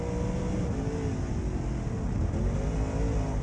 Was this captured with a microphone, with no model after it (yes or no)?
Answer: yes